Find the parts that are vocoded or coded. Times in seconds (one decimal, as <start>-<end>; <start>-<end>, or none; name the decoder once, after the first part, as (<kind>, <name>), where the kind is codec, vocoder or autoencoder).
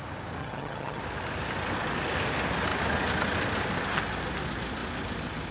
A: 0.4-1.0 (vocoder, HiFi-GAN)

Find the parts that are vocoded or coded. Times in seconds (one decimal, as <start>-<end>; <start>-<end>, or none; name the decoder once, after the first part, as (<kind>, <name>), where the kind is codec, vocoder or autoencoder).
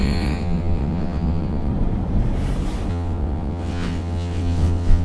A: 0.0-1.7 (vocoder, WaveNeXt); 2.9-5.0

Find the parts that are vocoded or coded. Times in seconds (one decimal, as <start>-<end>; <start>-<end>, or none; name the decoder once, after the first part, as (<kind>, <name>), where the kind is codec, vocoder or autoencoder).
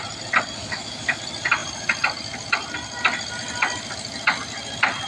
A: 0.6-1.2 (autoencoder, DAC-VAE)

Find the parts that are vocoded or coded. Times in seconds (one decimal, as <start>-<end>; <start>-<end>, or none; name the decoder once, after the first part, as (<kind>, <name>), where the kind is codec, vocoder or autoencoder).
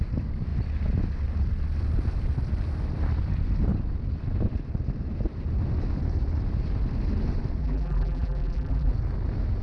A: 7.6-8.9 (vocoder, BigVGAN v2)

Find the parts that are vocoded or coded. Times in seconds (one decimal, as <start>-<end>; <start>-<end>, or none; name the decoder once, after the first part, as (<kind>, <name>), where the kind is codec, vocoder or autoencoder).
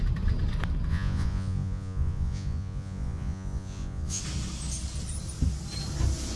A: 0.9-4.2 (vocoder, Vocos)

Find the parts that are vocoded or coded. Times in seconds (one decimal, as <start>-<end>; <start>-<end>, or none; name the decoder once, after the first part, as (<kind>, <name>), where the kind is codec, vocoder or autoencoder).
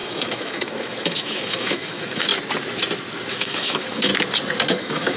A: 0.0-2.3 (autoencoder, DAC-VAE); 3.3-4.1; 4.7-5.2